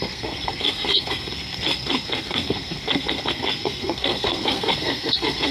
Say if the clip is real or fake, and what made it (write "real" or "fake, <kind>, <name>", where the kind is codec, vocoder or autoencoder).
fake, codec, SNAC